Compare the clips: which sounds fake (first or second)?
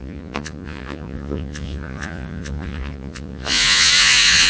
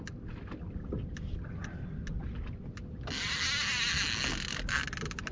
first